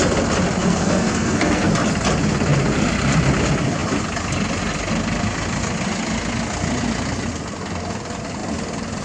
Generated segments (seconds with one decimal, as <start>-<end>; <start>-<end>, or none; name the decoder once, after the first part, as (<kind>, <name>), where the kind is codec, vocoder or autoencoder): 0.6-1.7 (codec, SNAC)